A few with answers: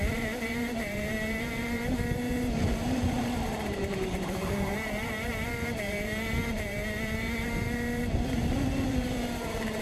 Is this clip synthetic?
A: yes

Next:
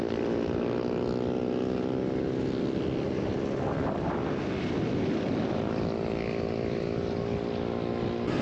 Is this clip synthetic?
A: no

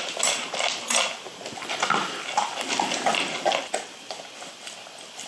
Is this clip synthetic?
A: no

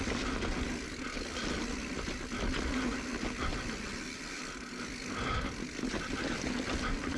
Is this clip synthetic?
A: no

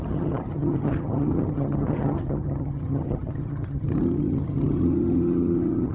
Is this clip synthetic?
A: yes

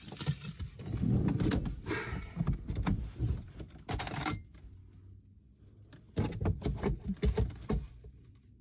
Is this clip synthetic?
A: no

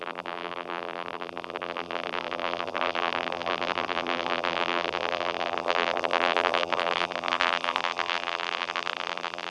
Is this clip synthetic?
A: yes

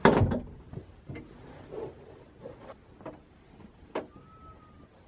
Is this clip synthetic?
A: no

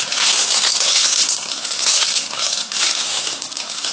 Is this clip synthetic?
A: yes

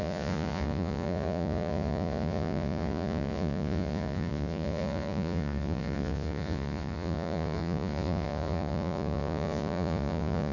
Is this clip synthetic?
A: yes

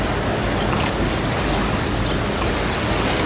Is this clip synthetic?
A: no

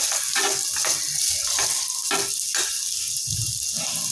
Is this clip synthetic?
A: no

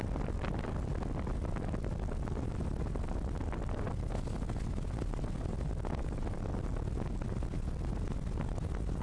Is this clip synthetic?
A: no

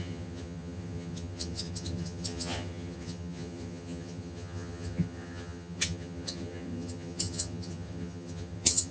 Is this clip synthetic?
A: yes